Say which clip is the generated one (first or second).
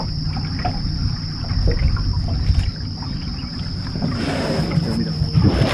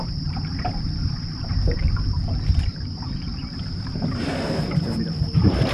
second